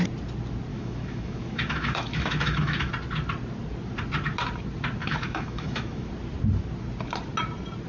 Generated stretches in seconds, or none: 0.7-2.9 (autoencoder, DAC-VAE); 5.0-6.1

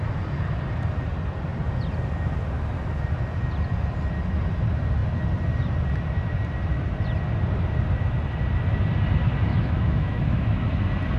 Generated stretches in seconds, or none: 9.5-10.7 (autoencoder, DAC-VAE)

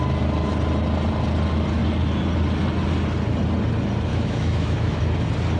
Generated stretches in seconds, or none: 4.1-5.0 (autoencoder, DAC-VAE)

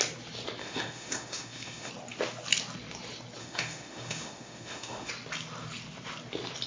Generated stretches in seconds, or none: 0.6-1.9 (autoencoder, DAC-VAE); 3.4-5.1

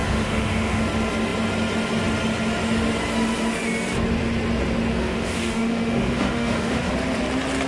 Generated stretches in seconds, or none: 0.0-0.8 (autoencoder, DAC-VAE); 4.9-6.9

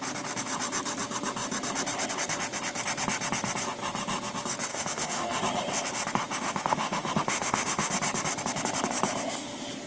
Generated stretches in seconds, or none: 4.7-5.4 (autoencoder, DAC-VAE); 6.4-7.9

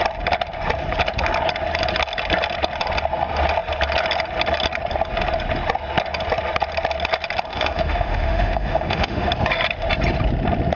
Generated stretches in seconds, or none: 7.5-9.3 (autoencoder, DAC-VAE)

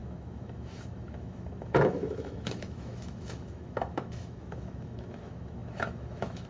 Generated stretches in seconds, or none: 0.0-6.5 (autoencoder, DAC-VAE)